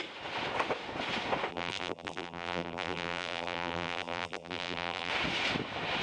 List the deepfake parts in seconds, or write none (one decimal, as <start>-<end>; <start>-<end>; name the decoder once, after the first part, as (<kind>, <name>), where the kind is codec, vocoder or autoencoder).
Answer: 1.5-5.1 (vocoder, BigVGAN v2)